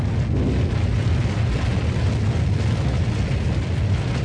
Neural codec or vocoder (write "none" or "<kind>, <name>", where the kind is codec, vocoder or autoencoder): none